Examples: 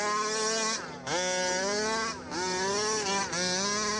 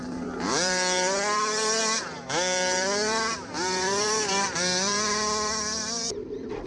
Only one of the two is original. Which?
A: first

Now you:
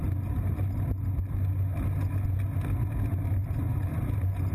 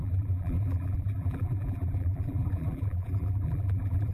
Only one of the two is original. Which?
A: first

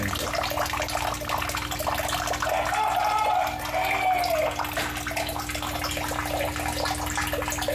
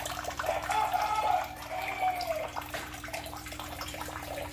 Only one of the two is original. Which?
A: first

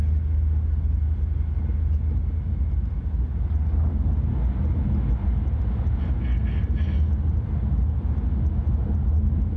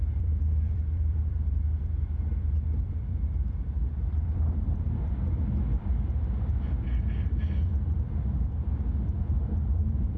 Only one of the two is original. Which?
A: first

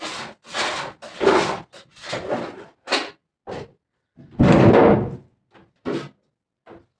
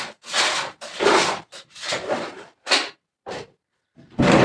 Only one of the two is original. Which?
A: first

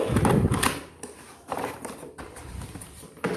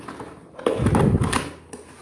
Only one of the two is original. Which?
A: second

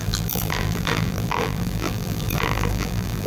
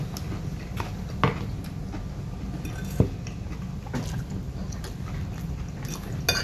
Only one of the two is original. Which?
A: second